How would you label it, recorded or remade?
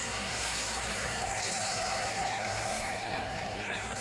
remade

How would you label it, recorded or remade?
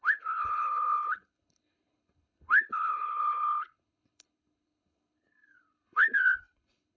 remade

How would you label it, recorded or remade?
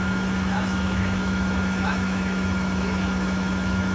remade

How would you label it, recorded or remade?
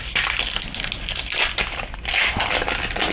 recorded